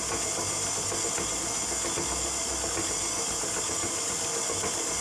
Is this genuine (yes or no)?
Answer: yes